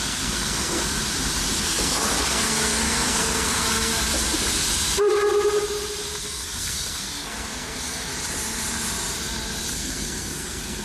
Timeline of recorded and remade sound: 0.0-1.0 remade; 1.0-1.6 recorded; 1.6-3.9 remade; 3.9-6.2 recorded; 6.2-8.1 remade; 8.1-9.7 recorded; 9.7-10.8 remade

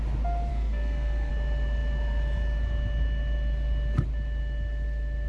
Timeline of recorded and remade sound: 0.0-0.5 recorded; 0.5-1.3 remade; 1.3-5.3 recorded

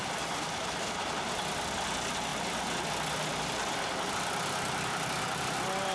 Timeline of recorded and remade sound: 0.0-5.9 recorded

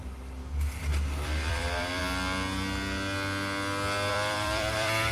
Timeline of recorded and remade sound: 0.0-0.4 remade; 0.4-0.9 recorded; 0.9-2.0 remade; 2.0-4.1 recorded; 4.1-5.1 remade

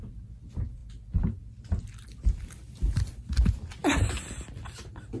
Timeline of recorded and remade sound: 0.0-5.2 recorded

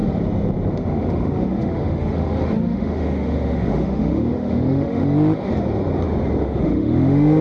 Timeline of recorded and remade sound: 0.0-0.7 recorded; 0.7-5.0 remade; 5.0-6.4 recorded; 6.4-7.4 remade

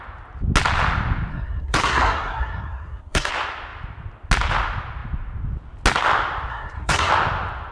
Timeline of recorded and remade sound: 0.0-1.3 recorded; 1.3-3.3 remade; 3.3-6.5 recorded; 6.5-7.1 remade; 7.1-7.7 recorded

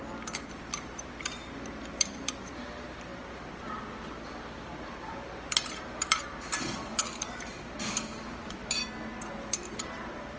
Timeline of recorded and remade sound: 0.0-10.4 remade